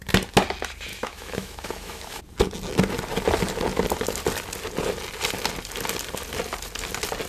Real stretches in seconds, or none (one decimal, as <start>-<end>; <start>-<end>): 0.0-0.9; 2.2-7.3